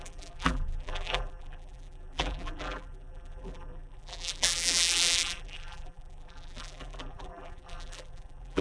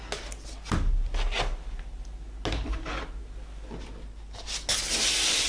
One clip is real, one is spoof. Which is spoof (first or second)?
first